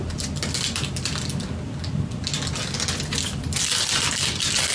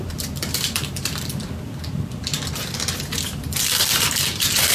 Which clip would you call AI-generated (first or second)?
second